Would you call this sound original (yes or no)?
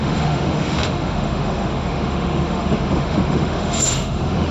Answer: no